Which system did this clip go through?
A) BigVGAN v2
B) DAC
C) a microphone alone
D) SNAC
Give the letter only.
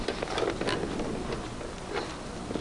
C